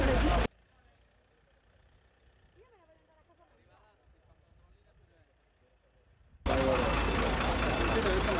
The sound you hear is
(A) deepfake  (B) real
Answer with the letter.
B